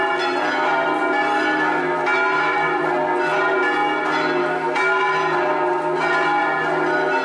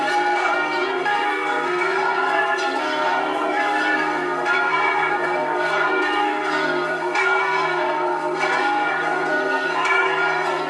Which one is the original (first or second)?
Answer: first